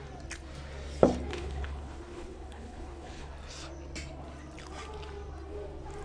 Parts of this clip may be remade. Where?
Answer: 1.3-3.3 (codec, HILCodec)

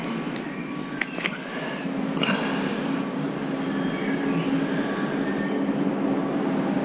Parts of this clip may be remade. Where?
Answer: 2.7-3.3 (codec, DAC)

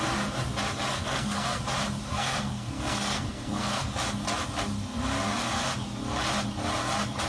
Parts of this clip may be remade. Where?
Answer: 0.9-1.6 (codec, SNAC); 2.1-3.9

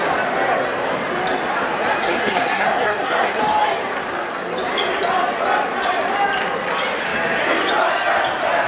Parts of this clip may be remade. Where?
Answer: 2.0-3.4 (codec, SNAC)